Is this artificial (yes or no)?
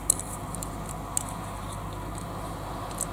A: no